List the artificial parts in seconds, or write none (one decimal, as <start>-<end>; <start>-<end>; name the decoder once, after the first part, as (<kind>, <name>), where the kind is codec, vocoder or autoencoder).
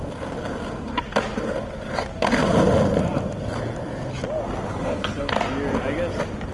4.7-5.3 (codec, HILCodec)